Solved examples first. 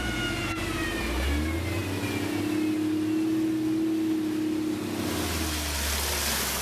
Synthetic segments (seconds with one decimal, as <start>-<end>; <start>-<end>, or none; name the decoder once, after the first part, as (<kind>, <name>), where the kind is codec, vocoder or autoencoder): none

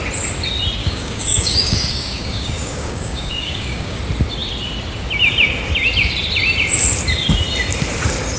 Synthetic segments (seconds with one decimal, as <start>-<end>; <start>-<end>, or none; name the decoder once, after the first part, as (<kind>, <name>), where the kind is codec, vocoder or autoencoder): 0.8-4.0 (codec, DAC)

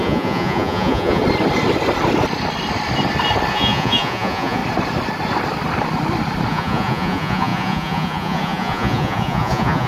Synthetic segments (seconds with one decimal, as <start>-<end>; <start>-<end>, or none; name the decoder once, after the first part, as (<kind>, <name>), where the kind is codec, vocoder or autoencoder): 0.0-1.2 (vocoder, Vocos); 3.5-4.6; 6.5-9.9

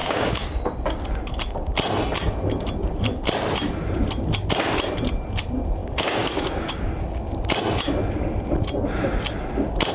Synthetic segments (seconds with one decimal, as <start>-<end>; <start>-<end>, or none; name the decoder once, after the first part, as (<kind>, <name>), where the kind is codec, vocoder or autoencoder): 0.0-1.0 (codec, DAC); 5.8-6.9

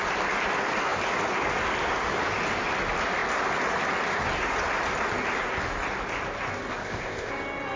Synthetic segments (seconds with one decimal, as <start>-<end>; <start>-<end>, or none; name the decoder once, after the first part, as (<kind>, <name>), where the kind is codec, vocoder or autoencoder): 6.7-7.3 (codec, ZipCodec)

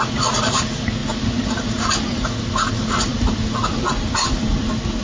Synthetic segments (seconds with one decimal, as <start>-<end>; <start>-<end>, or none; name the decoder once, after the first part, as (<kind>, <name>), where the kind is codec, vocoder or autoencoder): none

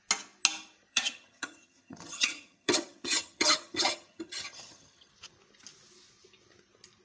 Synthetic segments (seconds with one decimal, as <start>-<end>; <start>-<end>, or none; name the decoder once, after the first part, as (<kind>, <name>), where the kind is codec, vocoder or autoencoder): 0.9-5.1 (vocoder, HiFi-GAN)